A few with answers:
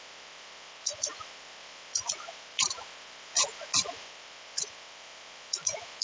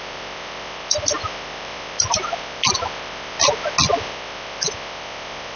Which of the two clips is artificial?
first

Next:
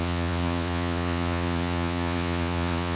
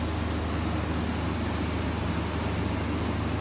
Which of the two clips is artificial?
first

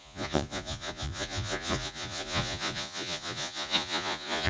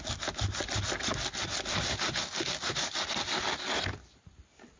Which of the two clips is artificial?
first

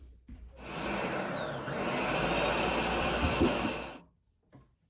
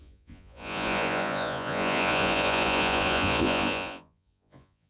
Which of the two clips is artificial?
second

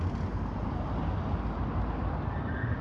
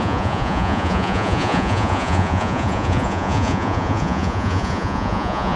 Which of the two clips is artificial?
second